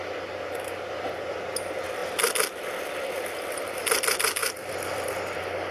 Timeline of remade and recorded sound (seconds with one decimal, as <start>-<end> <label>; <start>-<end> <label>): 0.0-2.0 recorded; 2.0-2.6 remade; 2.6-4.4 recorded; 4.4-5.1 remade; 5.1-5.7 recorded